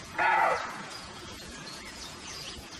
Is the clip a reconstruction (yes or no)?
yes